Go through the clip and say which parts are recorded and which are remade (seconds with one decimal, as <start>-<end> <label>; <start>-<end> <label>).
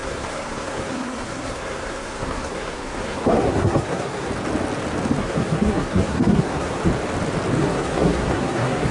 0.0-4.3 remade; 4.3-5.2 recorded; 5.2-6.8 remade; 6.8-7.6 recorded; 7.6-8.9 remade